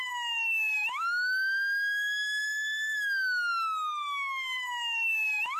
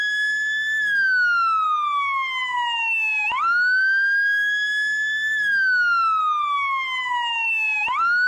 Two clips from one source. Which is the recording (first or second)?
second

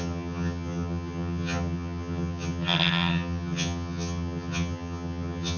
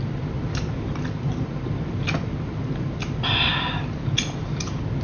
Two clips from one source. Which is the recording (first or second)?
second